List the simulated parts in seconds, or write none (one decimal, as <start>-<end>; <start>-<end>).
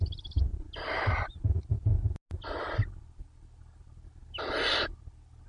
none